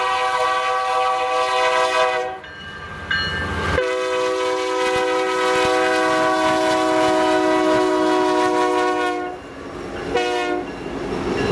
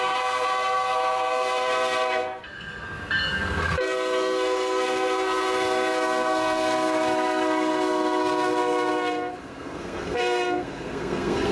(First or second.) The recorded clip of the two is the first